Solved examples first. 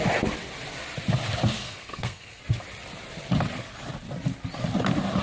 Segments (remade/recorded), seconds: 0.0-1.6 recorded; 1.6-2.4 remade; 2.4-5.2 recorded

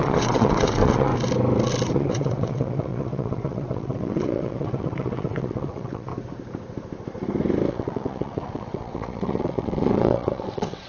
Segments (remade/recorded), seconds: 0.0-1.1 remade; 1.1-1.9 recorded; 1.9-6.1 remade; 6.1-7.7 recorded; 7.7-10.9 remade

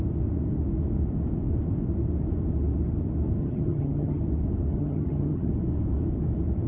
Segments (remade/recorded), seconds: 0.0-3.4 recorded; 3.4-4.2 remade; 4.2-4.7 recorded; 4.7-5.5 remade; 5.5-6.7 recorded

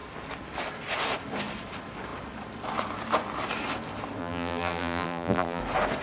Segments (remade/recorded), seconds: 0.0-4.2 recorded; 4.2-5.6 remade; 5.6-6.0 recorded

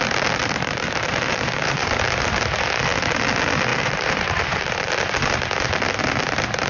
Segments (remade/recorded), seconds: 0.0-0.4 recorded; 0.4-1.9 remade; 1.9-3.7 recorded; 3.7-4.9 remade; 4.9-6.7 recorded

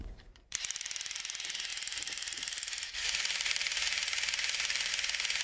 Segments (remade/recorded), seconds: 0.0-1.2 remade; 1.2-1.7 recorded; 1.7-4.9 remade; 4.9-5.4 recorded

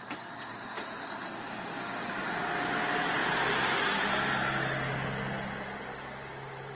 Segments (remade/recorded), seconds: 0.0-6.8 recorded

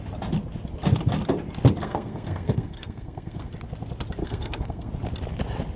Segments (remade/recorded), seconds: 0.0-1.8 recorded; 1.8-3.5 remade; 3.5-4.2 recorded; 4.2-4.9 remade; 4.9-5.8 recorded